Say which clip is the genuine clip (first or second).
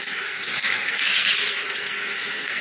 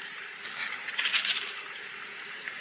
second